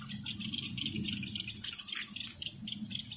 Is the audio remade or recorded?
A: recorded